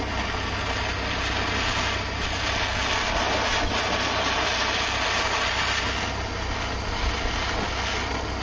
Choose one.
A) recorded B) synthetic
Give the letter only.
A